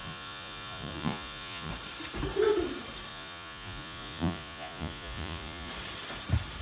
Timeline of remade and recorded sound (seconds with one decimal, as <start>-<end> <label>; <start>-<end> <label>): 0.0-1.7 remade; 1.7-3.1 recorded; 3.1-5.7 remade; 5.7-6.6 recorded